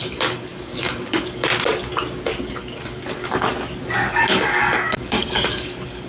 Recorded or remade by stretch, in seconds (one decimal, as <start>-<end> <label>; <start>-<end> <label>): 0.0-1.5 remade; 1.5-2.4 recorded; 2.4-3.5 remade; 3.5-4.1 recorded; 4.1-6.1 remade